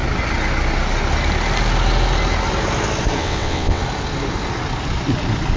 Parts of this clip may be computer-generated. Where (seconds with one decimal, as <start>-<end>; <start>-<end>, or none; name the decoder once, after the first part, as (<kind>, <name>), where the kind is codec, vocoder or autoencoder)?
3.2-3.8 (vocoder, WaveNeXt)